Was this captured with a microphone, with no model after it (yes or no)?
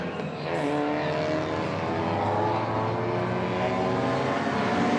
yes